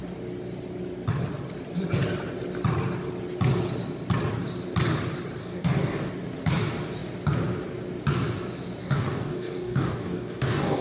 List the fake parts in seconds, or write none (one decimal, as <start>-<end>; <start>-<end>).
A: 5.4-6.1; 8.8-10.8